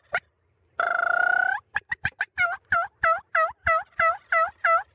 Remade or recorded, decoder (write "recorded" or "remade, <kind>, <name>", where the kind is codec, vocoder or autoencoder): remade, vocoder, BigVGAN v2